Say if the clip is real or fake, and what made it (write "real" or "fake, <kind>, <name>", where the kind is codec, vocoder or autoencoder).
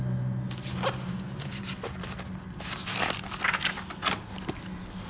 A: real